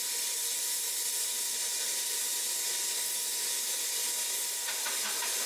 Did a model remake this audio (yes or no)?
no